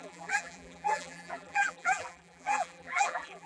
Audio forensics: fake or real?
fake